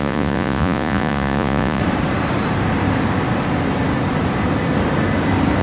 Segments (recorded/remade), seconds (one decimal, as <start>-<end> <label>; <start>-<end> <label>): 0.0-1.8 remade; 1.8-5.6 recorded